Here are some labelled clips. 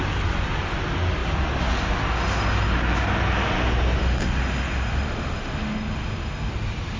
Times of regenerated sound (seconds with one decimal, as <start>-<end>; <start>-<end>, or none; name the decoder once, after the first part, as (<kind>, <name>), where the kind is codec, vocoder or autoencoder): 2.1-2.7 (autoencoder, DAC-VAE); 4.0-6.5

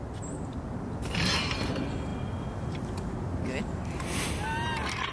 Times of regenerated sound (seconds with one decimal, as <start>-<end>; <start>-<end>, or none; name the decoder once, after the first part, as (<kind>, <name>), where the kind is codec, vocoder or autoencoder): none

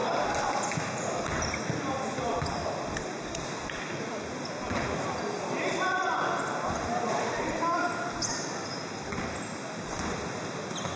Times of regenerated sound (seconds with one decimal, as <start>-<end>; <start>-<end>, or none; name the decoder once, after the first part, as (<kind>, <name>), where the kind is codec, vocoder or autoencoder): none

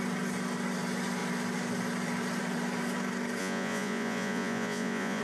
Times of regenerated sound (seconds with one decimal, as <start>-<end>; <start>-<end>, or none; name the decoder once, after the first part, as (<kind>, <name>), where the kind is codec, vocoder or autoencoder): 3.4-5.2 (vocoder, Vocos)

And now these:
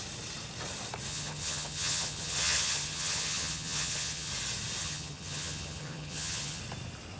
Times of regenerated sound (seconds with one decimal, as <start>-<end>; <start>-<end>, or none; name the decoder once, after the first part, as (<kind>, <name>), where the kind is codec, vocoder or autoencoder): 1.1-4.3 (vocoder, HiFi-GAN); 4.8-6.6